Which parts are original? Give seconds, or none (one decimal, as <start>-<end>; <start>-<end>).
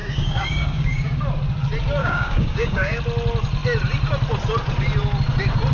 1.2-2.0; 3.0-5.7